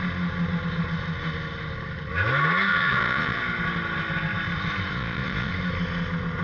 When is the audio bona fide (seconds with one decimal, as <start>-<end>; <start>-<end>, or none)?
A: 0.0-2.7; 3.4-4.9; 5.5-6.4